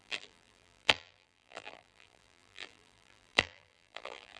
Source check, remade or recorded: remade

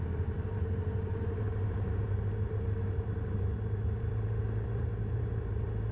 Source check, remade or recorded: remade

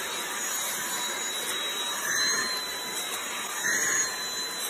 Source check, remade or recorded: recorded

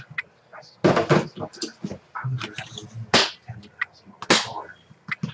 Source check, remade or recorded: recorded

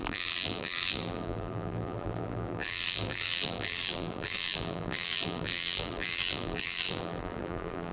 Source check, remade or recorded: remade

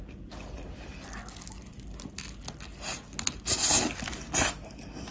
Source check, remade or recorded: recorded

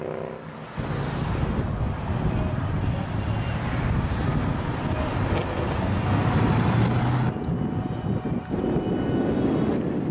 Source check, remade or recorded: recorded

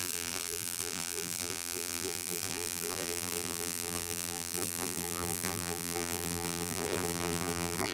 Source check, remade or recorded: remade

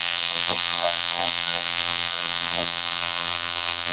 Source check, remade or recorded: remade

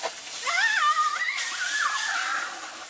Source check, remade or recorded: recorded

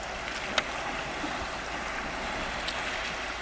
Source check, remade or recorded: recorded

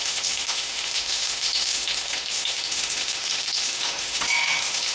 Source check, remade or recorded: remade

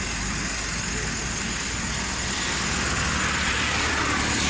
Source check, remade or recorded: recorded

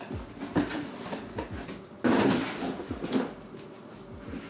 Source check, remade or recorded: recorded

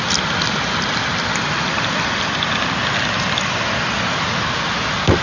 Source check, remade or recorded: recorded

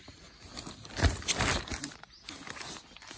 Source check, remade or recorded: recorded